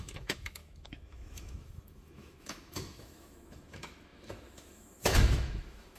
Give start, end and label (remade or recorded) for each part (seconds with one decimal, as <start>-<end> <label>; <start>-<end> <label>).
0.0-6.0 remade